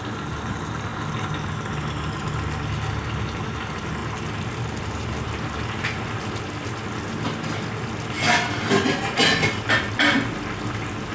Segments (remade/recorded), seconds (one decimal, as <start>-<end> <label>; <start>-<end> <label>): 0.0-11.1 recorded